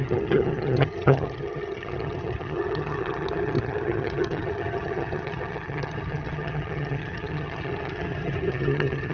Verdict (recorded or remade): remade